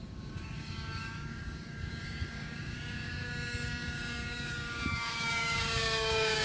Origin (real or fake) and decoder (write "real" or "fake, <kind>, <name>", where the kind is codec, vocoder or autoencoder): fake, codec, DAC